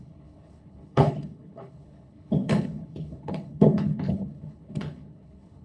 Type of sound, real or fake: fake